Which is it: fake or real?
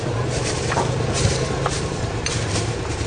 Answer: fake